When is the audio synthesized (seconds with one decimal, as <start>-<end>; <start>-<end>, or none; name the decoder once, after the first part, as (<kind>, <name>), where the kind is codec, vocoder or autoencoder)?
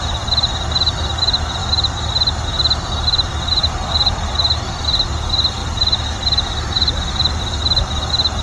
1.6-2.1 (vocoder, BigVGAN v2); 5.6-7.3